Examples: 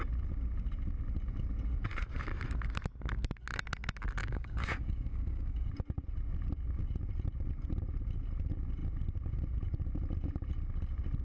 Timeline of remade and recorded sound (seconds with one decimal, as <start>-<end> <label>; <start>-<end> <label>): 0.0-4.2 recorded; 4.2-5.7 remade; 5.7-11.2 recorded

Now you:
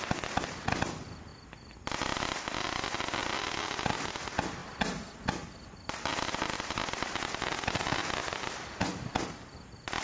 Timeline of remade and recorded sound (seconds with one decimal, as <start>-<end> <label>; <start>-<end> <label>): 0.0-10.0 recorded

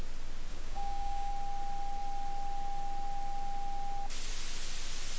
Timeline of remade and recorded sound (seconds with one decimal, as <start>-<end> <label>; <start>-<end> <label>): 0.0-0.5 recorded; 0.5-1.3 remade; 1.3-5.2 recorded

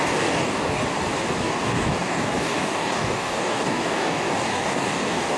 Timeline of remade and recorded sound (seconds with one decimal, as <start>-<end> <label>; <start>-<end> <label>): 0.0-0.8 remade; 0.8-1.4 recorded; 1.4-5.4 remade